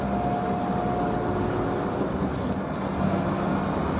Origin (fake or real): real